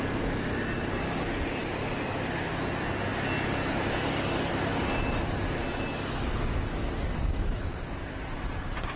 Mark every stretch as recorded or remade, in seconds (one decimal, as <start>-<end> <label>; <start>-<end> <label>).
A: 0.0-9.0 recorded